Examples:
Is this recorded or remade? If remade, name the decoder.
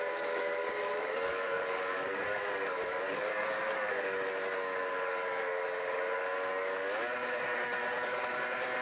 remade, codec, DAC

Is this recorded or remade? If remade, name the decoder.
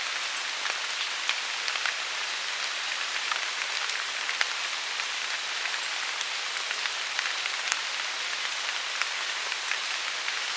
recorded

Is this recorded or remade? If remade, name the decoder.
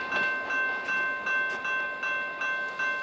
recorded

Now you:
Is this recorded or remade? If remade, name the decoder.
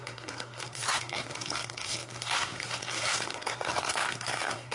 remade, codec, SNAC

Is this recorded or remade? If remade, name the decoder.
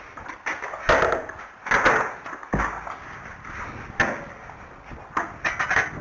recorded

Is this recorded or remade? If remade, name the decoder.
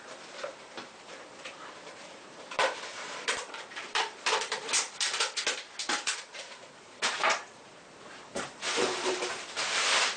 remade, vocoder, BigVGAN v2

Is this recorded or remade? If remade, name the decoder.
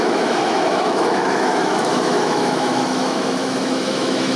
remade, autoencoder, DAC-VAE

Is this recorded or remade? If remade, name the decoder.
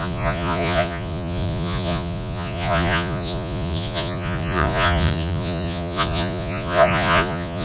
remade, vocoder, Vocos